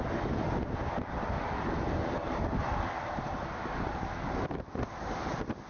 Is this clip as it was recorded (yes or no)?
yes